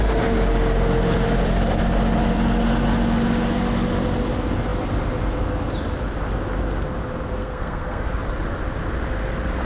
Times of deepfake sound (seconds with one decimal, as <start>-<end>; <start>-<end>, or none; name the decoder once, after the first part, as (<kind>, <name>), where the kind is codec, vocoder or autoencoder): 7.4-8.1 (codec, SNAC)